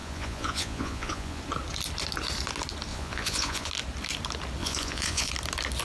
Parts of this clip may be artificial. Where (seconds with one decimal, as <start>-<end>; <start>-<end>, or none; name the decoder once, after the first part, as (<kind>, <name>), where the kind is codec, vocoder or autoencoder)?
0.0-1.4 (vocoder, Vocos); 2.9-3.7; 4.6-5.3